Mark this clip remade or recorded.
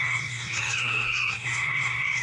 remade